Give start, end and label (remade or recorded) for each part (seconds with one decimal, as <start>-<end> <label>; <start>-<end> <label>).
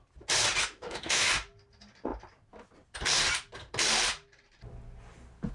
0.0-0.6 recorded; 0.6-1.3 remade; 1.3-5.5 recorded